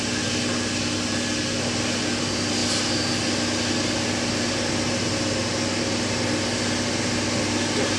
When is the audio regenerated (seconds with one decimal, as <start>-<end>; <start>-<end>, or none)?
none